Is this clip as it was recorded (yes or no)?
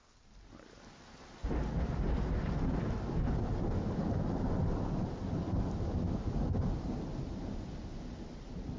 yes